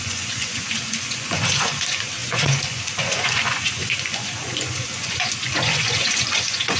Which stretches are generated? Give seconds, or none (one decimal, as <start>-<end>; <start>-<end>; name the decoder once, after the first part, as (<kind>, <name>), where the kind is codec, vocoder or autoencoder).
0.0-6.8 (vocoder, Vocos)